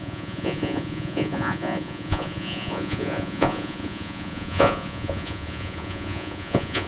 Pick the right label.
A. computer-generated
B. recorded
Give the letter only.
A